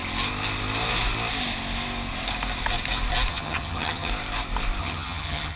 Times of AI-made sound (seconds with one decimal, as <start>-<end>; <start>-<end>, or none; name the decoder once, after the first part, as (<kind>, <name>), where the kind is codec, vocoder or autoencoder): 3.3-4.1 (vocoder, HiFi-GAN); 4.8-5.6